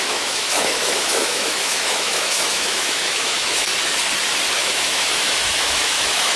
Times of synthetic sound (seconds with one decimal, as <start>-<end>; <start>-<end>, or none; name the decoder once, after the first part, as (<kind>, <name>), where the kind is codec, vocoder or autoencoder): 0.0-3.7 (autoencoder, DAC-VAE); 4.6-6.4